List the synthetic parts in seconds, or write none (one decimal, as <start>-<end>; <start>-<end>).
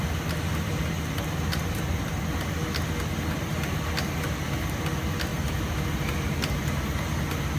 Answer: none